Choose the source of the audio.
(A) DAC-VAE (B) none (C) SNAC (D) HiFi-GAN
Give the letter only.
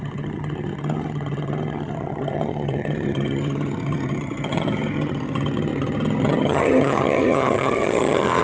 D